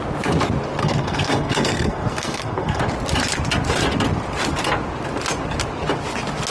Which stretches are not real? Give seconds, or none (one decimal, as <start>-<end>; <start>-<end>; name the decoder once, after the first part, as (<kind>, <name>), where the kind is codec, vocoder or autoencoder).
0.8-2.8 (codec, SNAC)